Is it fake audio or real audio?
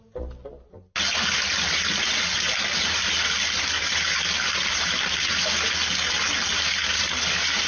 real